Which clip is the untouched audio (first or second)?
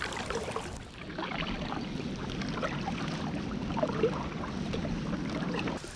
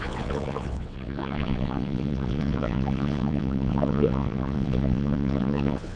first